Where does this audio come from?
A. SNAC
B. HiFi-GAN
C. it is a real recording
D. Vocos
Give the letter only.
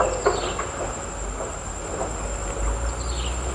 C